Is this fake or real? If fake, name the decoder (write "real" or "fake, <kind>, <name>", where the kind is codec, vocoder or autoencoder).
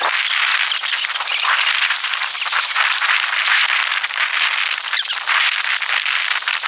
real